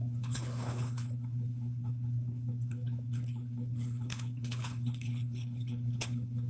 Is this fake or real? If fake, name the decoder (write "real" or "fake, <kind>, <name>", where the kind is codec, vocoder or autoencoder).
fake, codec, HILCodec